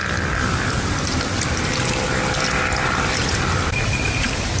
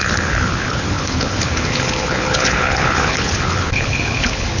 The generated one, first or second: second